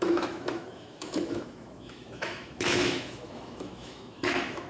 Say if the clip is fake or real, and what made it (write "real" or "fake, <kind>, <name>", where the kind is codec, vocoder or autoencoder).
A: fake, autoencoder, DAC-VAE